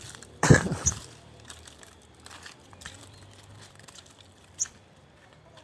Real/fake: fake